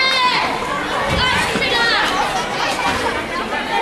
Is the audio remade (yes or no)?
no